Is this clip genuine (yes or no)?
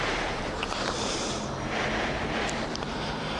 no